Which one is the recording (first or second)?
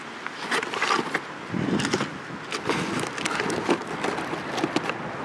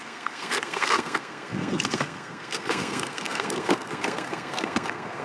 first